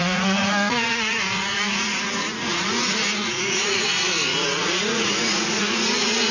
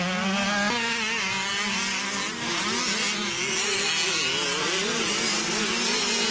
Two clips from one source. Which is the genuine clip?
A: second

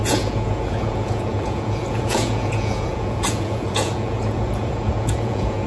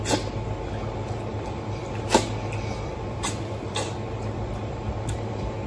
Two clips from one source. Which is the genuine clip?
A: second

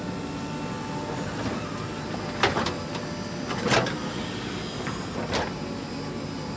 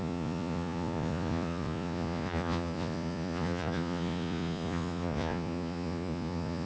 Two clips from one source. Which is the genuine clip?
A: first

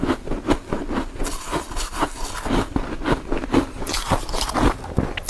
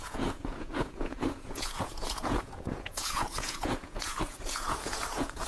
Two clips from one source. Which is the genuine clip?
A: first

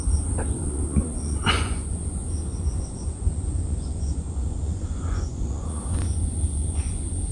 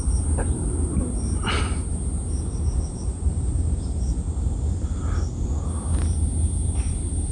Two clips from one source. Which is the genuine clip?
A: second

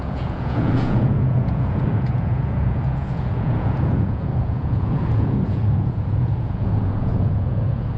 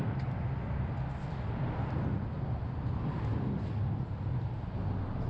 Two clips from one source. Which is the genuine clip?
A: second